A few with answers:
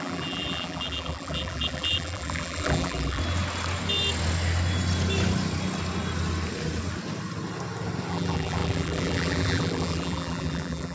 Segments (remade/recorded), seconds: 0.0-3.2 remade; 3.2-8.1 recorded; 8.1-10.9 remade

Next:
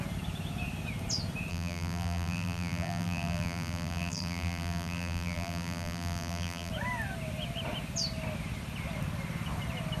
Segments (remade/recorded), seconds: 0.0-1.5 recorded; 1.5-6.7 remade; 6.7-10.0 recorded

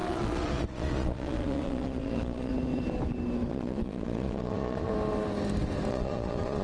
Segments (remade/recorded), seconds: 0.0-2.5 remade; 2.5-3.5 recorded; 3.5-4.9 remade; 4.9-5.9 recorded; 5.9-6.6 remade

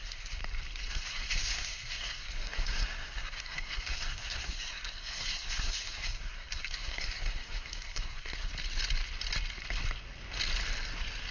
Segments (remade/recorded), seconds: 0.0-0.4 remade; 0.4-0.9 recorded; 0.9-8.5 remade; 8.5-11.3 recorded

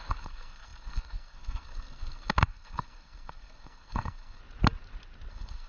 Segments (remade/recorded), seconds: 0.0-4.4 remade; 4.4-5.3 recorded; 5.3-5.7 remade